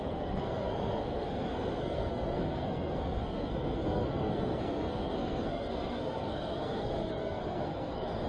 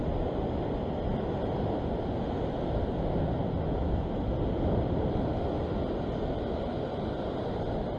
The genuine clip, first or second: second